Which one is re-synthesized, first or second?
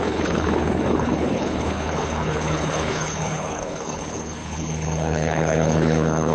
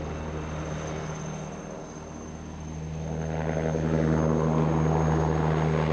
first